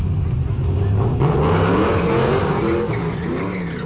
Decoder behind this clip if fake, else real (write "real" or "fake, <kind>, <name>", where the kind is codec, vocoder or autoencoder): real